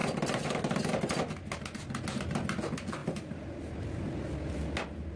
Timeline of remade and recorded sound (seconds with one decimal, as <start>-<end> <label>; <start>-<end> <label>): 0.0-5.2 recorded